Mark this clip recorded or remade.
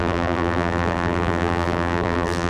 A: remade